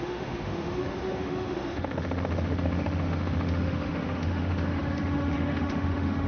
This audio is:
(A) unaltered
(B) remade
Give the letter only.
B